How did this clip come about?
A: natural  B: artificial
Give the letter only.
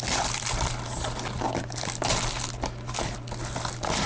A